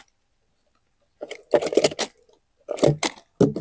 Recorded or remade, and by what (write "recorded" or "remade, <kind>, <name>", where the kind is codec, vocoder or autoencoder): recorded